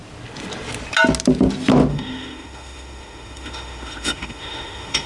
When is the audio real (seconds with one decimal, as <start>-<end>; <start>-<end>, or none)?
0.0-1.9